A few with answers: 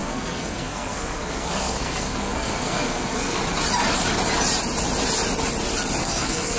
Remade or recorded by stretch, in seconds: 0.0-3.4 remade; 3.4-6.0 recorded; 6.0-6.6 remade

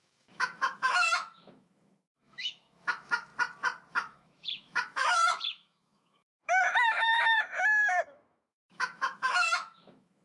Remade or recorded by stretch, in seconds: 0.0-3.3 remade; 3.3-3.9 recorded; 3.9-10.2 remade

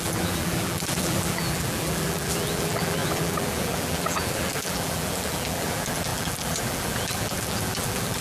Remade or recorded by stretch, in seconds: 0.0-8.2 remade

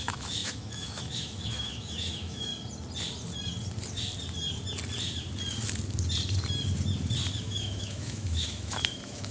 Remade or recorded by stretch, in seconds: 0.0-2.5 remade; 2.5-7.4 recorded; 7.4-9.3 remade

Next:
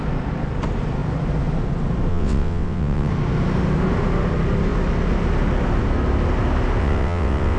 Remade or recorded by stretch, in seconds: 0.0-2.1 recorded; 2.1-3.1 remade; 3.1-6.8 recorded; 6.8-7.6 remade